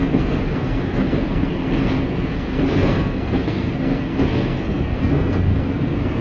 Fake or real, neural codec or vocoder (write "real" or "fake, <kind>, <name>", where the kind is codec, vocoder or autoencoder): fake, codec, SNAC